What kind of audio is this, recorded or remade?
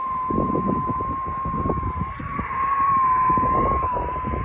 recorded